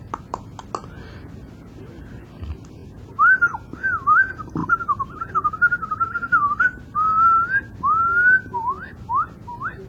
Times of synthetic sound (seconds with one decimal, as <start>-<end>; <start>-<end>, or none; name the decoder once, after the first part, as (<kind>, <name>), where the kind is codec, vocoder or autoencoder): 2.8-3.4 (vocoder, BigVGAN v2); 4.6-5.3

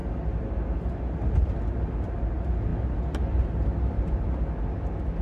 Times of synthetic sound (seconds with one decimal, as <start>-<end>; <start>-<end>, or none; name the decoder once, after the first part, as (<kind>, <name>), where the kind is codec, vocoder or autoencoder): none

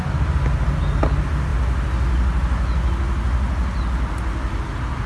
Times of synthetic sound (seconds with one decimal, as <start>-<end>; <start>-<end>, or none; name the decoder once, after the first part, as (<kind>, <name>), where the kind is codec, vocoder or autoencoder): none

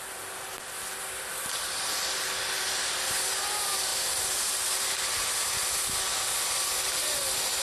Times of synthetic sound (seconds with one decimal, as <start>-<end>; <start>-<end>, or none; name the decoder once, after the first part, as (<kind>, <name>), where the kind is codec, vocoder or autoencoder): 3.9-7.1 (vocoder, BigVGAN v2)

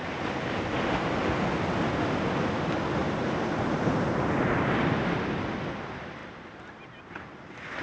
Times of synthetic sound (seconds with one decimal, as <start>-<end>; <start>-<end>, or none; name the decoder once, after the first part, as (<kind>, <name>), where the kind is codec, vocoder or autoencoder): 3.0-4.0 (vocoder, BigVGAN v2); 6.2-7.0

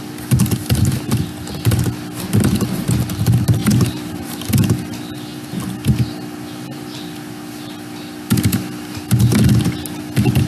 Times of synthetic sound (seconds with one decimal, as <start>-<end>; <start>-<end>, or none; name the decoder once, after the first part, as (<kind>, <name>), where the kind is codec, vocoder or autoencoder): 3.6-4.5 (vocoder, BigVGAN v2)

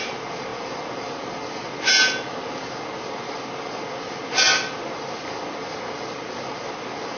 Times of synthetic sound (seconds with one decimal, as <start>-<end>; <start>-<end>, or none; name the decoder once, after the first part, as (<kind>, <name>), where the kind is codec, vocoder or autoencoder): none